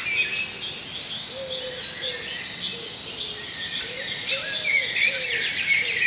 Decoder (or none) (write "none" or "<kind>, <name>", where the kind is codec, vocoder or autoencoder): none